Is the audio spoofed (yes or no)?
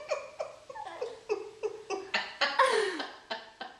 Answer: no